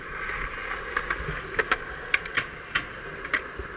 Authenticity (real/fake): real